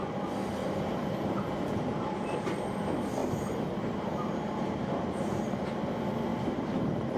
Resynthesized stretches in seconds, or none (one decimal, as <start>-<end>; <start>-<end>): 0.6-2.8; 3.2-5.7; 6.3-7.2